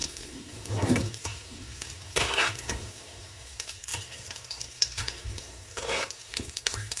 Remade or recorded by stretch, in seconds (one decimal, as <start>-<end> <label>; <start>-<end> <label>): 0.0-7.0 remade